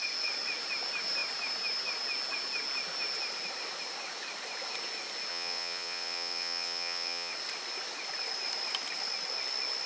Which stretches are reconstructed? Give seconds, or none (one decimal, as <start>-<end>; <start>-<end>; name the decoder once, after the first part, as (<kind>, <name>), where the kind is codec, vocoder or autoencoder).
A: 5.3-7.3 (vocoder, WaveNeXt)